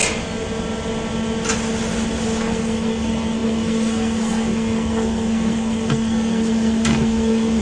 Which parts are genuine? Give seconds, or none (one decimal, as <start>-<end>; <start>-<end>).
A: 0.0-2.4